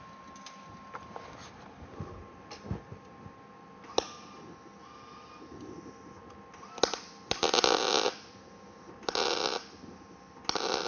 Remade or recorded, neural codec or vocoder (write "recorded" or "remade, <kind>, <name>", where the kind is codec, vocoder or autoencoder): recorded